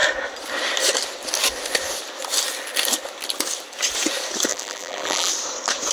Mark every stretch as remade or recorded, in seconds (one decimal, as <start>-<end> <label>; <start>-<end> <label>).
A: 0.0-4.5 recorded; 4.5-5.3 remade; 5.3-5.9 recorded